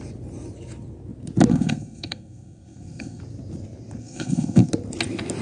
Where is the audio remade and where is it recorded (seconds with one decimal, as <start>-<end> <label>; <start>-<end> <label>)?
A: 0.0-1.5 recorded; 1.5-3.2 remade; 3.2-4.0 recorded; 4.0-4.7 remade; 4.7-5.4 recorded